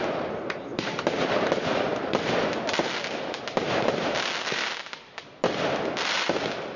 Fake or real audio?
real